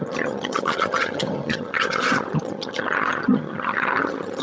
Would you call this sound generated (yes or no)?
yes